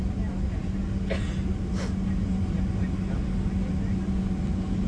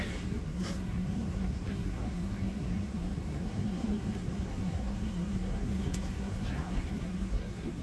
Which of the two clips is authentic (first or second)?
first